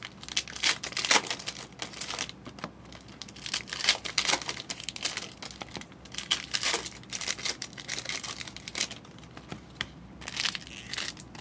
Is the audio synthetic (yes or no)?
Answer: no